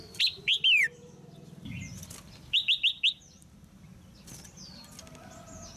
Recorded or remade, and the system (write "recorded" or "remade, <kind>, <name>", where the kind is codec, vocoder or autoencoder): recorded